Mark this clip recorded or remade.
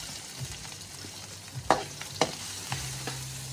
recorded